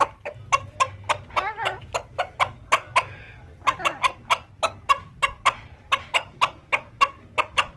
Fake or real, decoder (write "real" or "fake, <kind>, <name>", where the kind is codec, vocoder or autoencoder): real